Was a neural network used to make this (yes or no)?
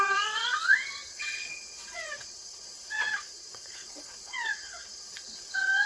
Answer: yes